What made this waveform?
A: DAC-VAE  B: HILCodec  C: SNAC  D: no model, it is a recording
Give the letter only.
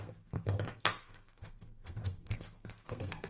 C